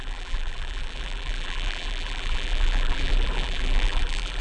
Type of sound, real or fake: fake